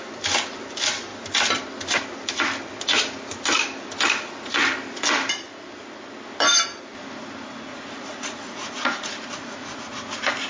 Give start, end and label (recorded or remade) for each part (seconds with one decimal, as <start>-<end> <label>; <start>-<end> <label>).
0.0-7.7 recorded; 7.7-9.8 remade; 9.8-10.5 recorded